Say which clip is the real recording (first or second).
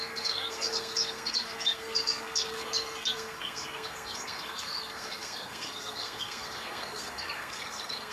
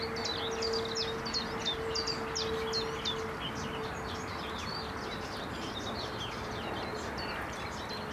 second